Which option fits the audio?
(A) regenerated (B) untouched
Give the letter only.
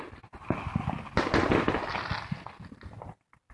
B